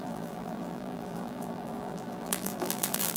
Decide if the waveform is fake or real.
fake